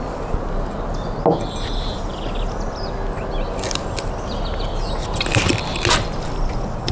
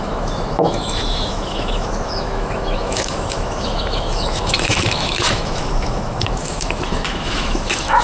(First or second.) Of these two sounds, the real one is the first